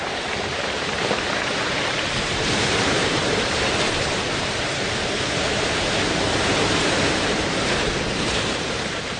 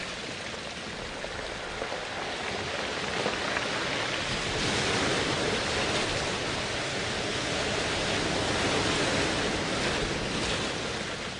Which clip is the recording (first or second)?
second